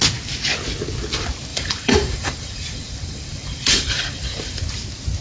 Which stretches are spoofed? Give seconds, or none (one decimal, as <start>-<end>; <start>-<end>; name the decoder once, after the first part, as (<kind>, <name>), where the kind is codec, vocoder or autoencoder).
1.5-4.6 (vocoder, BigVGAN v2)